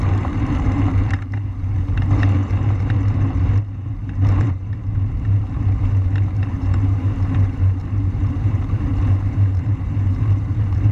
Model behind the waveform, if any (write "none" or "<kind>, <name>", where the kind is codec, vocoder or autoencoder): vocoder, BigVGAN v2